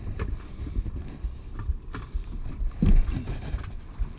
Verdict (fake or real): real